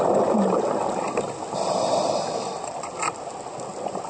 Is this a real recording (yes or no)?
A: yes